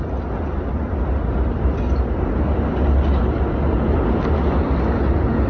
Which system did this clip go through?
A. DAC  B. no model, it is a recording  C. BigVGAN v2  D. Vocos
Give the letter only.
B